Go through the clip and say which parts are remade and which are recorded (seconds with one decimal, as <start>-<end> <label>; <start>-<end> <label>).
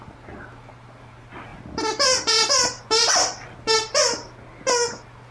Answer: 0.0-5.3 recorded